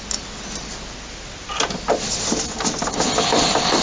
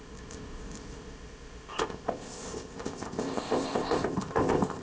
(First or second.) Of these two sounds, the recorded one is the first